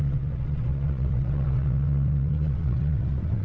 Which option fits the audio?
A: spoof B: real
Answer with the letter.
A